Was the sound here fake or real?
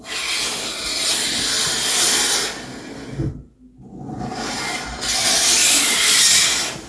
real